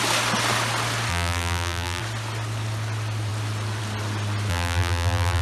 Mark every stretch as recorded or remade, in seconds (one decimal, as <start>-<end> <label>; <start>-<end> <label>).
0.0-1.1 recorded; 1.1-2.0 remade; 2.0-4.5 recorded; 4.5-5.4 remade